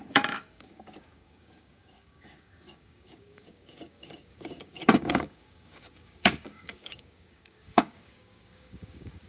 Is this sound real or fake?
fake